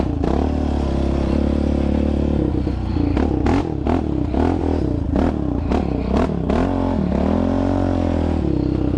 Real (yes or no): yes